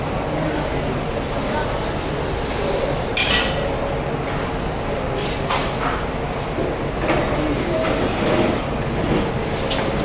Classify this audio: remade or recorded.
recorded